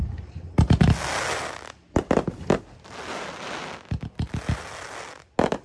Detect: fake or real real